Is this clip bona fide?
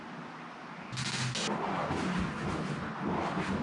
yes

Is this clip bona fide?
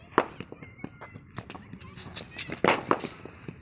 yes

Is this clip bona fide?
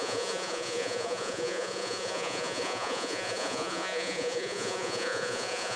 no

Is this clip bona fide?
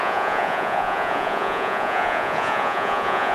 no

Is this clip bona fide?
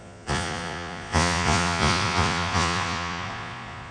no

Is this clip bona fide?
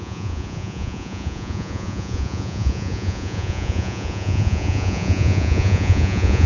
no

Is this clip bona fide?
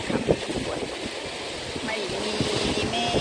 yes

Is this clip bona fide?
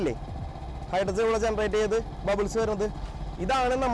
yes